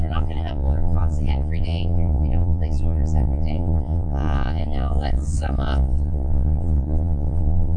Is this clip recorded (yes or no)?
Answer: no